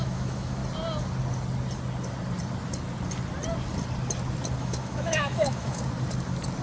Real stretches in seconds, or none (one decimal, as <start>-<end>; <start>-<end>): 0.6-4.6; 5.8-6.6